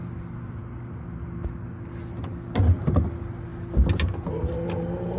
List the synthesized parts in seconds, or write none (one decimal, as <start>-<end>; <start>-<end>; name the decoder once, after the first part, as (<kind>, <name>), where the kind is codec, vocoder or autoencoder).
none